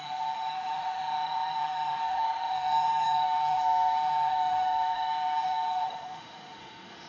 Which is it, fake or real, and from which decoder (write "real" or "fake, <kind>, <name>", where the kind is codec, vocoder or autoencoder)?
fake, autoencoder, DAC-VAE